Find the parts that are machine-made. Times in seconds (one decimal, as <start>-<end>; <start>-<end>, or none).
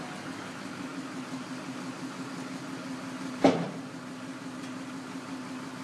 none